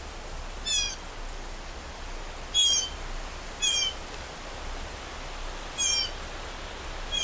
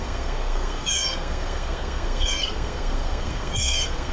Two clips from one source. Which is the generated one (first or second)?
second